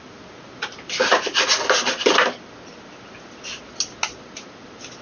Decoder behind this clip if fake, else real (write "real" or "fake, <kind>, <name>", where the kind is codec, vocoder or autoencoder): real